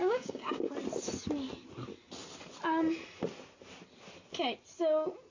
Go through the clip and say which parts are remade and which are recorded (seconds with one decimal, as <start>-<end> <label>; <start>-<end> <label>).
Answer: 0.0-0.7 remade; 0.7-5.3 recorded